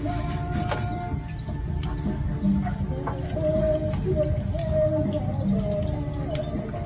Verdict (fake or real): real